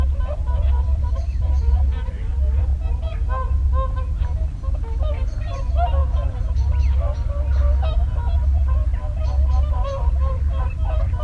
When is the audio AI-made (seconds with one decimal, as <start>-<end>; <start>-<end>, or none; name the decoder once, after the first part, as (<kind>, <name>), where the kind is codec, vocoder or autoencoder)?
0.0-2.7 (vocoder, BigVGAN v2); 5.1-6.0; 7.9-11.2